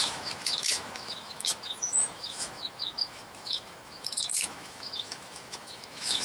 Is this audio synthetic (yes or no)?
yes